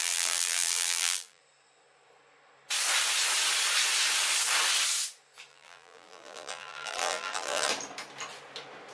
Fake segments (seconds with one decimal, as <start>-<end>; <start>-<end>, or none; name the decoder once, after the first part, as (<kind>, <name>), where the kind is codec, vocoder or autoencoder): 0.0-1.4 (vocoder, BigVGAN v2); 5.5-7.7